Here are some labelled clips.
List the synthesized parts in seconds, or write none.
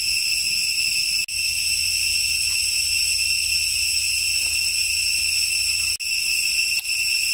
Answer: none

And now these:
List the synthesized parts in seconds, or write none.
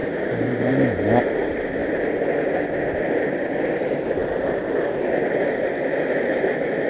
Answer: 0.0-0.7 (codec, DAC)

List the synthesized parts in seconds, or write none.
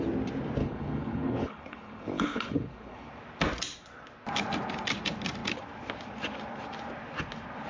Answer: 0.6-3.1 (codec, HILCodec)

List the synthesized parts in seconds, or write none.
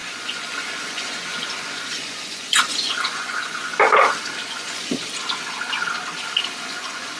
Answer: 0.0-3.7 (vocoder, Vocos); 4.5-4.9; 6.6-7.2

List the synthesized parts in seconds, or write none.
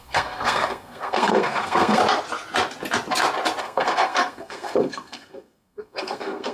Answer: 0.0-2.0 (codec, SNAC); 3.6-6.5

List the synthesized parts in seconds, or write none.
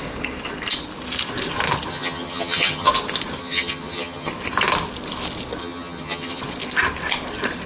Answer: 1.9-2.9 (vocoder, HiFi-GAN); 3.4-4.3; 5.6-6.4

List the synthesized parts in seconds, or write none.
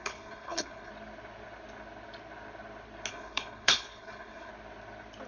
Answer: 0.0-0.9 (codec, HILCodec); 3.1-4.5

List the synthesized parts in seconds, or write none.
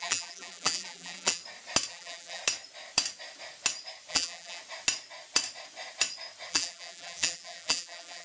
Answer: 0.0-1.4 (vocoder, BigVGAN v2); 1.9-2.4; 4.1-4.6; 6.5-8.2